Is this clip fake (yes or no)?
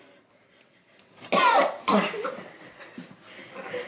no